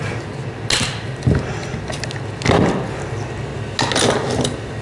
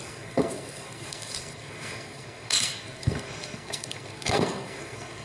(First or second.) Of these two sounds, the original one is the first